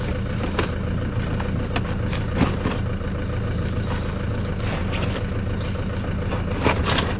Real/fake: real